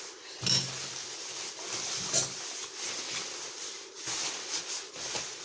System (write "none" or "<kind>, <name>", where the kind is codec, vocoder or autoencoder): none